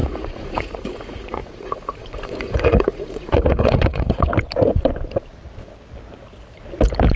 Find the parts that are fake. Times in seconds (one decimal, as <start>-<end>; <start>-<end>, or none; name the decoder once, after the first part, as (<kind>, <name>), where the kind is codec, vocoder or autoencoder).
0.0-4.3 (vocoder, Vocos)